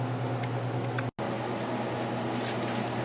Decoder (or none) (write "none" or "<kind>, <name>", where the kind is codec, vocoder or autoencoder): none